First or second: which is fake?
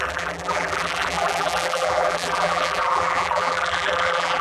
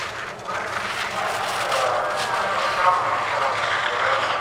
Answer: first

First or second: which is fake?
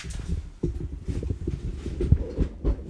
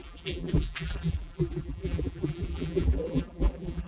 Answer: second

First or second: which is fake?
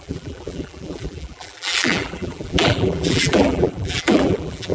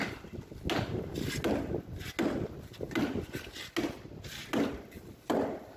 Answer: first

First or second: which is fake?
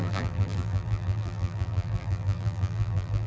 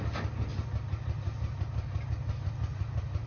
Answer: first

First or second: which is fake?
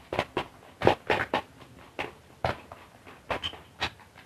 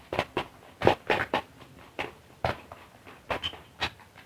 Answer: second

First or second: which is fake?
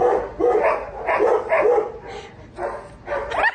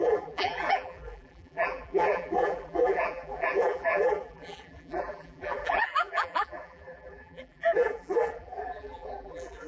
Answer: second